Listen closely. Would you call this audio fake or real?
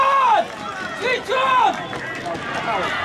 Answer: real